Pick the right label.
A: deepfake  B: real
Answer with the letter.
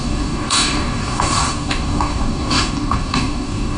A